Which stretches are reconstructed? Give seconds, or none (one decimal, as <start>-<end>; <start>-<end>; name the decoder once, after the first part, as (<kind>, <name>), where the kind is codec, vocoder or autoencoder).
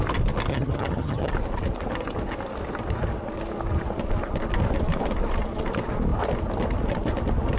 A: 0.5-1.3 (vocoder, HiFi-GAN)